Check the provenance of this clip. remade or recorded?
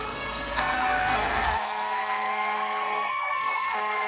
remade